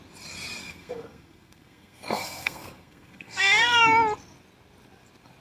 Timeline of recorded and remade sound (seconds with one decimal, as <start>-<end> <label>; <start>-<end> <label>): 0.0-0.6 recorded; 0.6-3.8 remade; 3.8-5.4 recorded